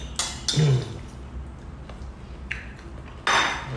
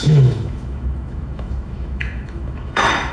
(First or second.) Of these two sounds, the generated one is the second